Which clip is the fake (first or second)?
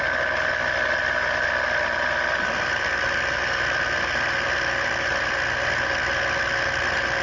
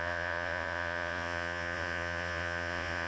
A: second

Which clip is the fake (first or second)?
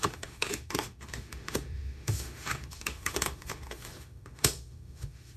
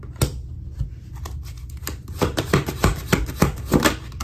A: first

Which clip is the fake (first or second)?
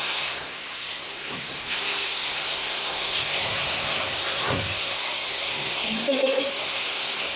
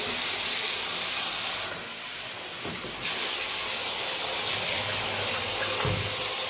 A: first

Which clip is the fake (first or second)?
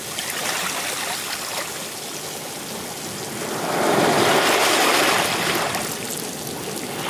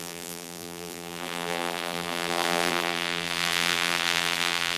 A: second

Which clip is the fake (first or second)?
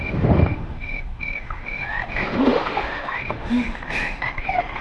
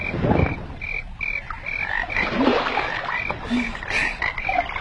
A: first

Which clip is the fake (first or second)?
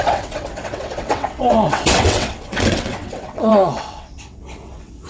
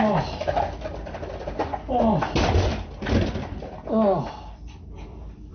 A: first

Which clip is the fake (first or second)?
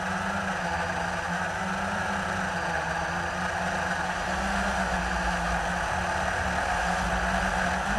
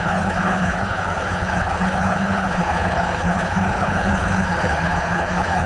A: second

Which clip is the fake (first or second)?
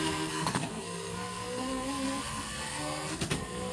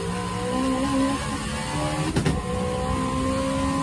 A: first